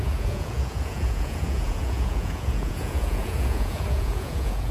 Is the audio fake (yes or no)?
yes